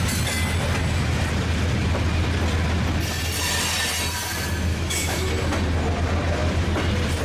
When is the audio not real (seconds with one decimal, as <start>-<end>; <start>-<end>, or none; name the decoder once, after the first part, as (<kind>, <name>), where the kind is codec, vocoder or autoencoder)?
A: 4.7-5.3 (autoencoder, DAC-VAE)